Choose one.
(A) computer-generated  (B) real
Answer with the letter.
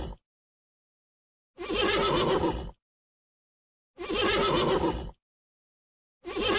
B